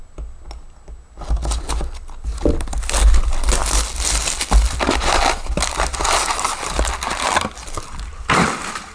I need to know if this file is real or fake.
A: real